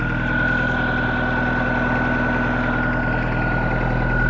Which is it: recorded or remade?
recorded